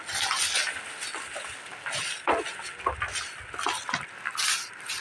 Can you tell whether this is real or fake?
real